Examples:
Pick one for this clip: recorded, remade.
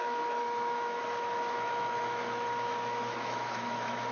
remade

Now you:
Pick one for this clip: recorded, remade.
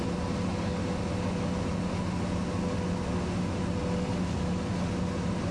recorded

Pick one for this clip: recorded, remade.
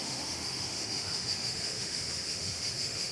remade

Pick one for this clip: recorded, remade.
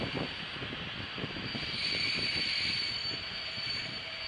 recorded